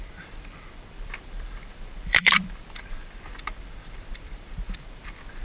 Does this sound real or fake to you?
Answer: fake